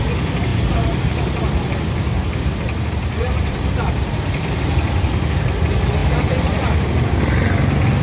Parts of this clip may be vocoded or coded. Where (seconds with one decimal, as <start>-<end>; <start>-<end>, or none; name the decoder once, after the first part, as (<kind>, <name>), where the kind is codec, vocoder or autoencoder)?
0.5-3.7 (vocoder, BigVGAN v2); 6.0-7.1